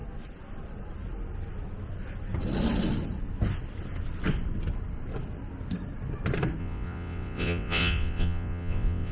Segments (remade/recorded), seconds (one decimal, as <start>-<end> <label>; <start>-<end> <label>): 0.0-6.6 recorded; 6.6-9.1 remade